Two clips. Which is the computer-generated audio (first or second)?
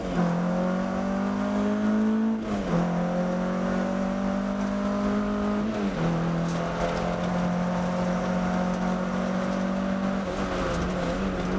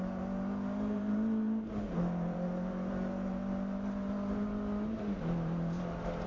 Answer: second